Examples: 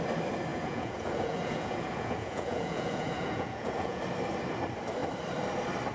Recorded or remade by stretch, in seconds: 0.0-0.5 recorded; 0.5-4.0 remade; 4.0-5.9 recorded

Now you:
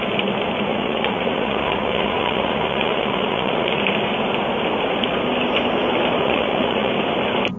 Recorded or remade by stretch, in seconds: 0.0-0.7 recorded; 0.7-3.8 remade; 3.8-6.2 recorded; 6.2-6.9 remade; 6.9-7.6 recorded

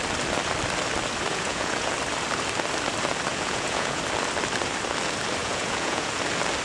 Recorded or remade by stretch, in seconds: 0.0-1.3 recorded; 1.3-1.9 remade; 1.9-3.3 recorded; 3.3-4.0 remade; 4.0-5.4 recorded; 5.4-6.1 remade; 6.1-6.6 recorded

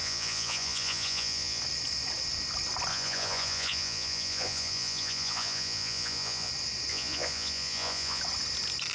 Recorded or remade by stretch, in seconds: 0.0-1.6 remade; 1.6-2.9 recorded; 2.9-6.5 remade; 6.5-6.9 recorded; 6.9-8.2 remade; 8.2-8.9 recorded